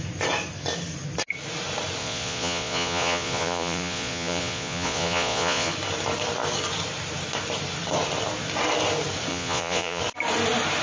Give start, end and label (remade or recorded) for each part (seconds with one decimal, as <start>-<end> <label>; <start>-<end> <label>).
0.0-2.0 recorded; 2.0-5.7 remade; 5.7-9.3 recorded; 9.3-10.0 remade; 10.0-10.8 recorded

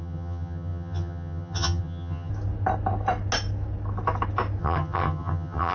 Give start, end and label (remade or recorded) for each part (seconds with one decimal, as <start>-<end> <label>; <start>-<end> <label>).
0.0-2.3 remade; 2.3-4.6 recorded; 4.6-5.7 remade